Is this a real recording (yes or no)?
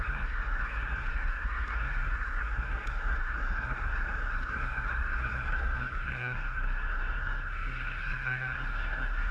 no